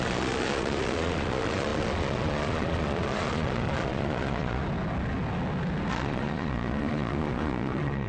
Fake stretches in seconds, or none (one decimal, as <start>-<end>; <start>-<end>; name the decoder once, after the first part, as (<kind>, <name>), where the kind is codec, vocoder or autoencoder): 0.0-4.6 (vocoder, Vocos); 5.9-8.1